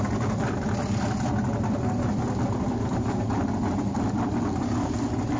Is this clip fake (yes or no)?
no